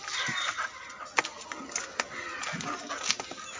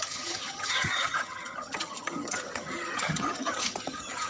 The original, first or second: first